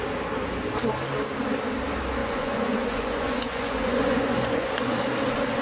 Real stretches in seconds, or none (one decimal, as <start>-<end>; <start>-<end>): 0.0-2.2; 4.8-5.6